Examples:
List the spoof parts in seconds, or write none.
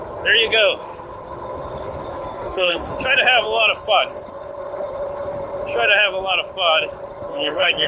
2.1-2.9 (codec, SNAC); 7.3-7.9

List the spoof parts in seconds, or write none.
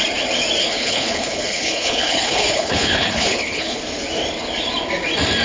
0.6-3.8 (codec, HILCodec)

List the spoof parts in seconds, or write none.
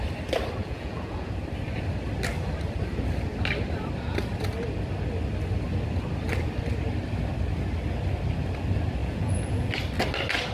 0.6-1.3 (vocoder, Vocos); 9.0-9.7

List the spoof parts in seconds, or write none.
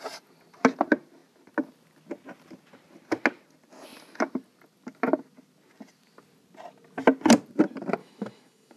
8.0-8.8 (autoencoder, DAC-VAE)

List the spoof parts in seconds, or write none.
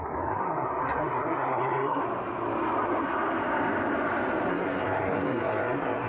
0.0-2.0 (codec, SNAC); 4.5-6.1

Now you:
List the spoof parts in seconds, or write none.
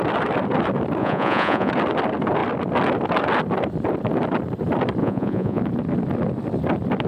1.0-1.7 (vocoder, Vocos); 5.0-5.6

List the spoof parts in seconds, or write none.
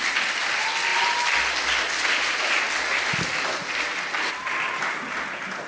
none